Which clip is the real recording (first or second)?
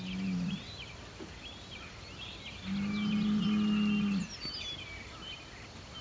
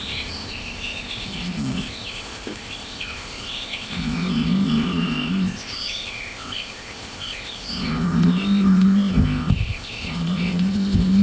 first